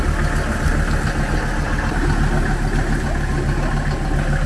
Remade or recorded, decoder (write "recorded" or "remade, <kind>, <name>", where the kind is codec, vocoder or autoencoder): recorded